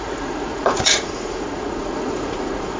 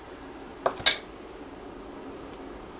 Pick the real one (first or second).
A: second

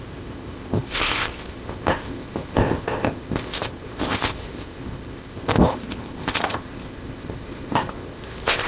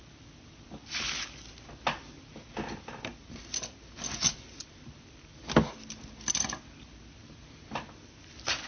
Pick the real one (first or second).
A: second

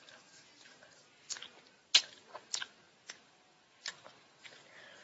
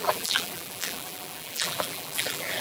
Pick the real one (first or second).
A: first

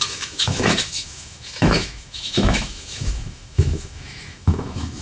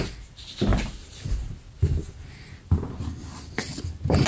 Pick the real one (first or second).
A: second